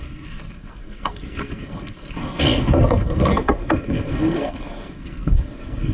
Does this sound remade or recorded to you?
remade